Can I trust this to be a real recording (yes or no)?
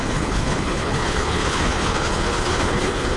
no